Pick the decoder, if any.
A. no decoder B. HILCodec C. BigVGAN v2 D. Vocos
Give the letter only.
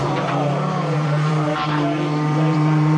C